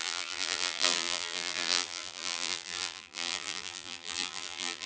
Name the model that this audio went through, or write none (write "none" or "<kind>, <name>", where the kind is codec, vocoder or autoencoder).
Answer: vocoder, BigVGAN v2